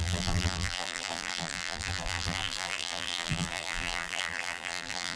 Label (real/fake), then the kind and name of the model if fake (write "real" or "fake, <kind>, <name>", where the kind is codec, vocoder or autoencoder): fake, vocoder, BigVGAN v2